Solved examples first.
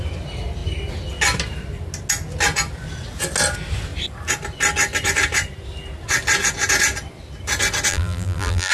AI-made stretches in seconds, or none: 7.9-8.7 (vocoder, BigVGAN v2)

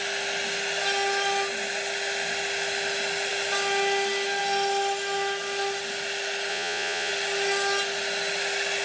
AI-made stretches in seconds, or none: 6.5-7.1 (vocoder, Vocos)

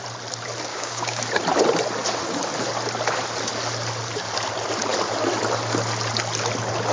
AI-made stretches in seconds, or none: 0.7-1.2 (codec, DAC)

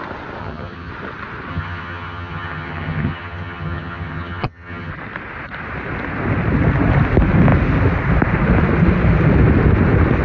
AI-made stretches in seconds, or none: 0.4-0.9 (vocoder, HiFi-GAN); 1.5-4.9

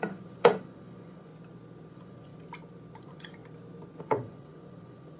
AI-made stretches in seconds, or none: 0.0-1.3 (vocoder, Vocos); 1.9-2.3; 3.0-3.4; 4.0-5.2